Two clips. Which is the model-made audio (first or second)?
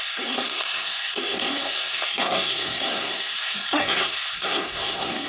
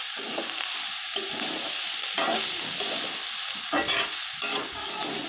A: first